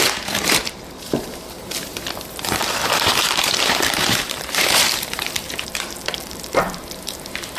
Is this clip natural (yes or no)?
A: no